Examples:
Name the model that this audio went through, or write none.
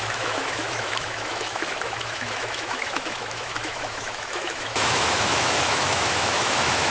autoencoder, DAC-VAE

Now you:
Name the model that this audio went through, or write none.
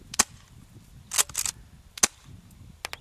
none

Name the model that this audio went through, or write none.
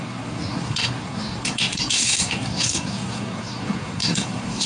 codec, SNAC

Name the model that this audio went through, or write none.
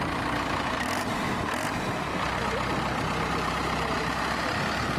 vocoder, BigVGAN v2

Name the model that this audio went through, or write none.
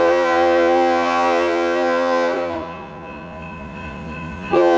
vocoder, Vocos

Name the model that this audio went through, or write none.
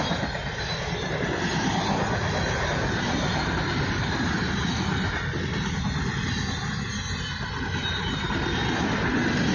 none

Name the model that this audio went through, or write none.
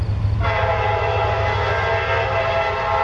none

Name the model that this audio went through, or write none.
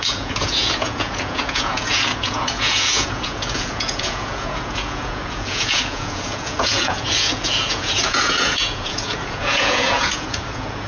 vocoder, Vocos